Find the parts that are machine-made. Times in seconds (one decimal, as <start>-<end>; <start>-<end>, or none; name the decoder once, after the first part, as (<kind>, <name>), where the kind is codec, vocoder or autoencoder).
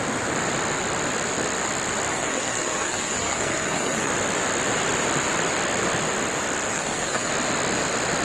2.1-4.1 (codec, SNAC); 6.7-7.3